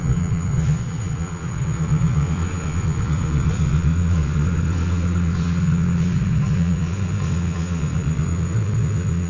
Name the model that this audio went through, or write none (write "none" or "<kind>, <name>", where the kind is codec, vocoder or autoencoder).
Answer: vocoder, Vocos